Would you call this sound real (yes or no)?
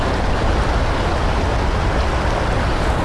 yes